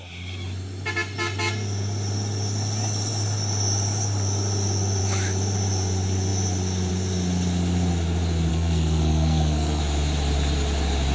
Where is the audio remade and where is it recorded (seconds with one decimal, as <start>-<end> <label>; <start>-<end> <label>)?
0.0-8.5 recorded; 8.5-9.8 remade; 9.8-11.1 recorded